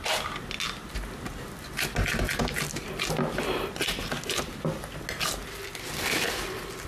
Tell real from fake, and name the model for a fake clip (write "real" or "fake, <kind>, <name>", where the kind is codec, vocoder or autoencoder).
real